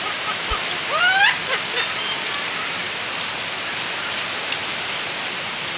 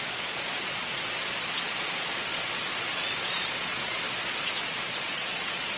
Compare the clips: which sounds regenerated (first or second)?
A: second